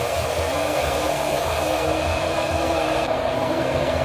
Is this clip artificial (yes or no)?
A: yes